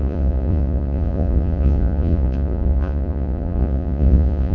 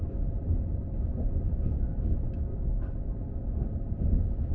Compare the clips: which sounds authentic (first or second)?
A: second